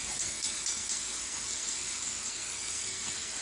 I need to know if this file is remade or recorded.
remade